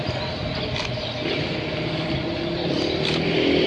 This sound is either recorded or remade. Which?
recorded